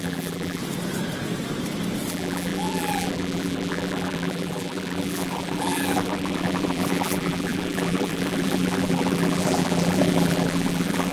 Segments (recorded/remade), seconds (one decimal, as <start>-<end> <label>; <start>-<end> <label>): 0.0-0.6 remade; 0.6-2.1 recorded; 2.1-11.1 remade